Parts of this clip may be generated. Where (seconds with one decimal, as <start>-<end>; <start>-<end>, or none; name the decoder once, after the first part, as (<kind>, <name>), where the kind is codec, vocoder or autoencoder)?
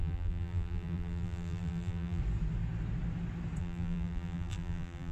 0.0-2.2 (vocoder, BigVGAN v2); 3.6-5.1